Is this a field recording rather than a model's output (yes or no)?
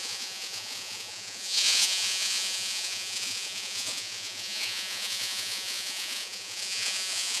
no